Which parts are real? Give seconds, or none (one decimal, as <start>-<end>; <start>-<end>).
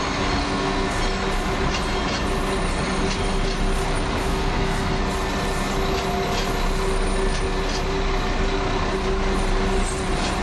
0.0-0.4; 1.0-4.2; 5.0-10.4